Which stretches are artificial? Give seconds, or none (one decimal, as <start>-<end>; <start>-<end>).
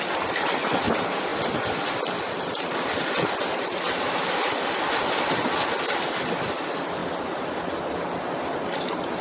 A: none